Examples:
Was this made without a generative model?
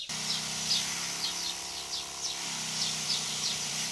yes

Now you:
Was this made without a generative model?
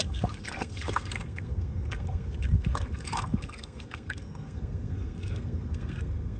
no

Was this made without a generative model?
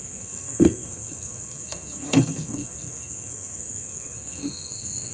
no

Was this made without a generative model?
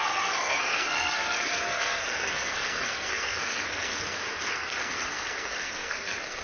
no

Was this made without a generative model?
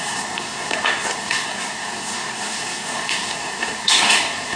no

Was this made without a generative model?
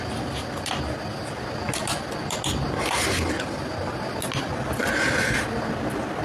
yes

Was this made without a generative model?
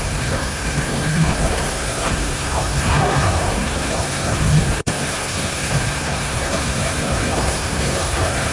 no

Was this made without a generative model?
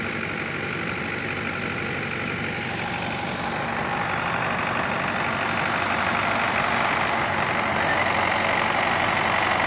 yes